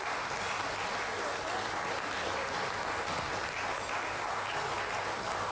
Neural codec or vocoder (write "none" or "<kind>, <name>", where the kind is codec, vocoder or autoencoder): none